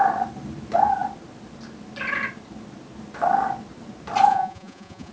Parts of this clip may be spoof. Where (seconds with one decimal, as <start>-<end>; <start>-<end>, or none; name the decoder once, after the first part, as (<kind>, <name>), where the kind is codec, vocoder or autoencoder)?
4.3-5.1 (vocoder, Vocos)